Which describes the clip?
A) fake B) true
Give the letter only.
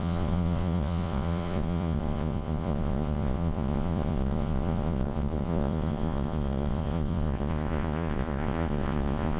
A